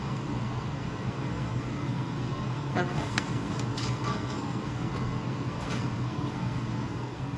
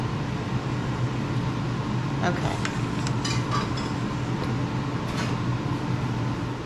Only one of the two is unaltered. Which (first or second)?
second